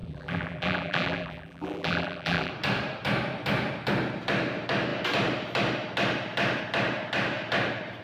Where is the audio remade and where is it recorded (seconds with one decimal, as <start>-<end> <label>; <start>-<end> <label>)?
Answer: 0.0-2.5 remade; 2.5-8.0 recorded